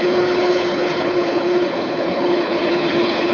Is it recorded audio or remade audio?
remade